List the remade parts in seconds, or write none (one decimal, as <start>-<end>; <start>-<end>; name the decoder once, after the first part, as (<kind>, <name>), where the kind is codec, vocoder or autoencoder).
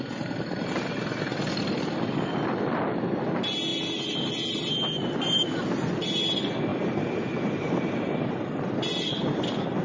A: none